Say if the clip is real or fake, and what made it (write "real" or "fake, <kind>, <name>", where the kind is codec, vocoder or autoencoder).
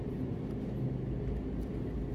real